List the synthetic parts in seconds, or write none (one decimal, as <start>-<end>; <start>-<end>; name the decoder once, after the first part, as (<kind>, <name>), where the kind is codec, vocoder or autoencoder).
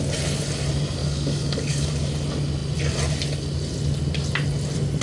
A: 1.0-1.9 (codec, DAC)